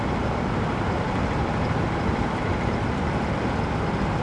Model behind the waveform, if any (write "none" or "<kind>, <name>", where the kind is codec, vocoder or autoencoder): none